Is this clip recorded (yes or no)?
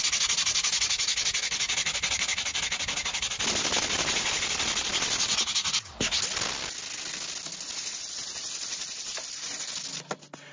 yes